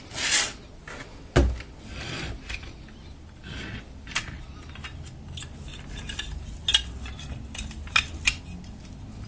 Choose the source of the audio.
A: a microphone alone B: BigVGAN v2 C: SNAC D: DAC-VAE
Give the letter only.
A